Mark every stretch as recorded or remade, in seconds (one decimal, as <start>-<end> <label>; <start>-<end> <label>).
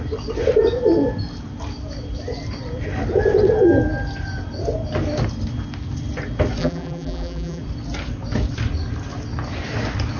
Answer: 0.0-6.6 recorded; 6.6-7.6 remade; 7.6-10.2 recorded